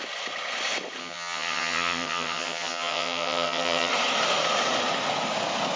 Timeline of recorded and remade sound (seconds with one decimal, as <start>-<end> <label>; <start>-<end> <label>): 0.0-1.0 recorded; 1.0-3.9 remade; 3.9-5.8 recorded